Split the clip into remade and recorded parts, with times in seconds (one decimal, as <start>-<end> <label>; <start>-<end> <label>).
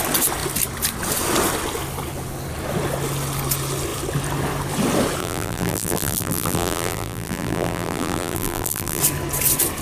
0.0-5.2 recorded; 5.2-9.0 remade; 9.0-9.8 recorded